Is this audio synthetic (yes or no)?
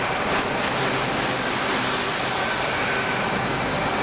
no